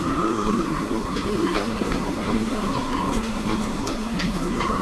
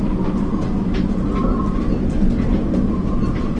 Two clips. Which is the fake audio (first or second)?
first